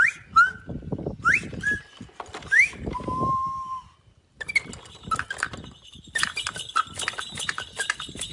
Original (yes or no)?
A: yes